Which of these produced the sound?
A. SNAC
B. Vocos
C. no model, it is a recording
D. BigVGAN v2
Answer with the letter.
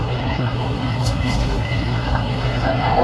A